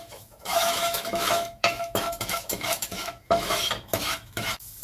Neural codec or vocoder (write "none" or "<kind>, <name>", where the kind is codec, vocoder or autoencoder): autoencoder, DAC-VAE